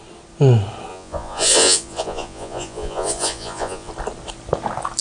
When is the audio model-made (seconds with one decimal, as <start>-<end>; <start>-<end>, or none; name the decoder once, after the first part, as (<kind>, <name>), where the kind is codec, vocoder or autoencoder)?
0.9-3.9 (vocoder, Vocos)